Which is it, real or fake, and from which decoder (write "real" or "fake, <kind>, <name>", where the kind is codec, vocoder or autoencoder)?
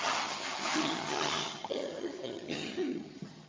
fake, vocoder, HiFi-GAN